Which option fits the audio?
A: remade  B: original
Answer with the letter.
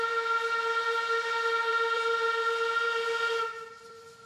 A